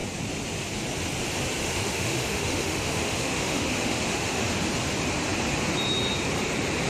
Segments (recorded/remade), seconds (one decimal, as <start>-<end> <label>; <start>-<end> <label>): 0.0-1.6 recorded; 1.6-4.5 remade; 4.5-6.9 recorded